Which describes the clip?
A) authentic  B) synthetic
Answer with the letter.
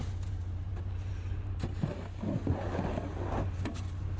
A